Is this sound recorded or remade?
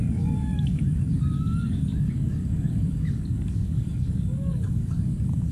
remade